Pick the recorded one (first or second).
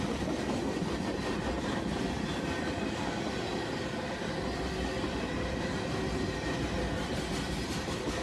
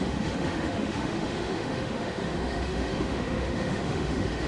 first